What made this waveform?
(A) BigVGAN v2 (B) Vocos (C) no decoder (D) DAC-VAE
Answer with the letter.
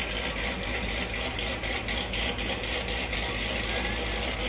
C